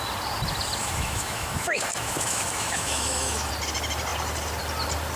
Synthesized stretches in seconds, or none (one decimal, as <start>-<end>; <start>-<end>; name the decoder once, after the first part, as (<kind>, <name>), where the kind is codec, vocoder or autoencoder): 0.8-3.5 (autoencoder, DAC-VAE)